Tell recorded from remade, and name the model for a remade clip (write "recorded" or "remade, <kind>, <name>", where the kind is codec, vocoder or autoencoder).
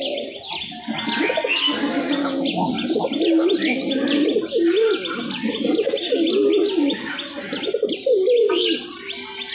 recorded